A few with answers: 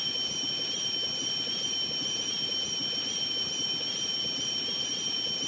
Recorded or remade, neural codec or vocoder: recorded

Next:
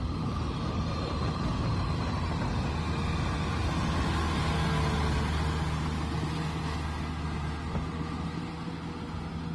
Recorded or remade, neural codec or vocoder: recorded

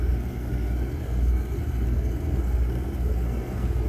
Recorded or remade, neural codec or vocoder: remade, codec, SNAC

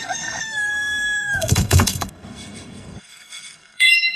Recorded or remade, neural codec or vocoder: remade, codec, SNAC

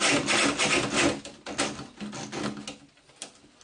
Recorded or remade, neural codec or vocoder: recorded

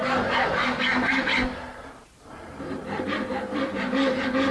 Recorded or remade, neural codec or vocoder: recorded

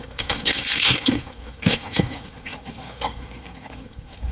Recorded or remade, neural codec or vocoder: remade, codec, SNAC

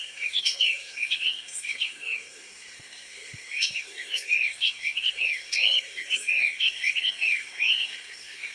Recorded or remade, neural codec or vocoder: remade, codec, SNAC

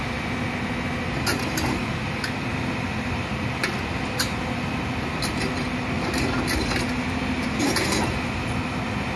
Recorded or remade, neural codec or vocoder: recorded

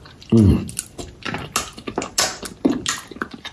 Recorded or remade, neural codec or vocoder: recorded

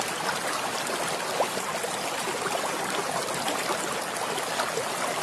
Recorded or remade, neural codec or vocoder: recorded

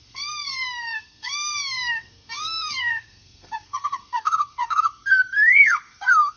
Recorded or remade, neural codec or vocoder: remade, codec, SNAC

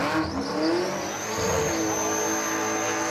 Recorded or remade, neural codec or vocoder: recorded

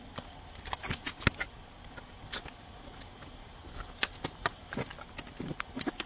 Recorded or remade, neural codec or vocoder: recorded